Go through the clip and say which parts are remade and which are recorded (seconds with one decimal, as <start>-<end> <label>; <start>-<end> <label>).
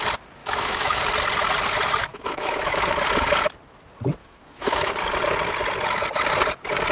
0.0-0.4 recorded; 0.4-1.0 remade; 1.0-2.1 recorded; 2.1-2.8 remade; 2.8-4.2 recorded; 4.2-4.9 remade; 4.9-6.9 recorded